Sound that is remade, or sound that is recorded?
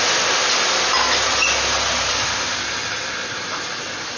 recorded